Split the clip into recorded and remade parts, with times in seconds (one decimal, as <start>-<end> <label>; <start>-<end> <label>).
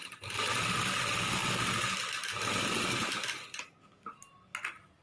0.0-0.6 remade; 0.6-5.0 recorded